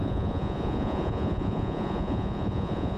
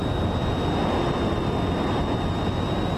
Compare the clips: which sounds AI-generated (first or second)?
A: first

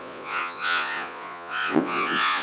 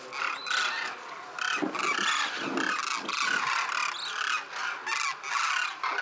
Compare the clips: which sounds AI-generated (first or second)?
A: first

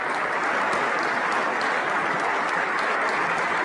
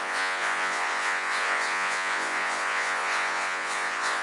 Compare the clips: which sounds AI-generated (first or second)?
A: second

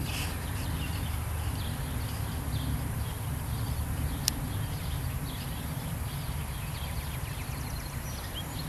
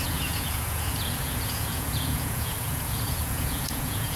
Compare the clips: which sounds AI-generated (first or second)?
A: second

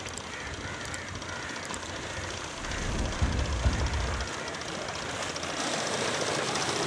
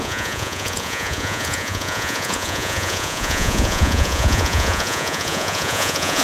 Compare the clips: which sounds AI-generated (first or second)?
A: second